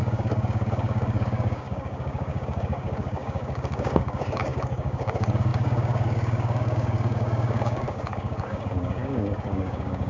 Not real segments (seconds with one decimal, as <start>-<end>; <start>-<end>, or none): 0.0-10.1